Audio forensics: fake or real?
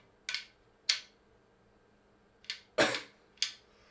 real